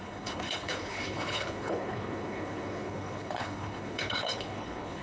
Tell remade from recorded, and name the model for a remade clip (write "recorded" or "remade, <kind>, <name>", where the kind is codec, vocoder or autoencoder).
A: remade, codec, HILCodec